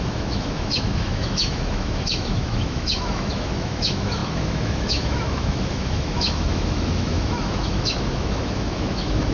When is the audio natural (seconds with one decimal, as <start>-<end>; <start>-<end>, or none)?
none